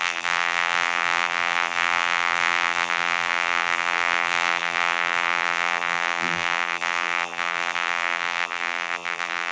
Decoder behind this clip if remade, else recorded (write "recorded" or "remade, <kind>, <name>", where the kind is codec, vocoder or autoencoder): remade, vocoder, BigVGAN v2